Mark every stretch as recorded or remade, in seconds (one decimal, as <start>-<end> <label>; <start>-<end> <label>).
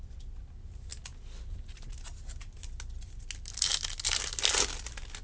0.0-5.2 recorded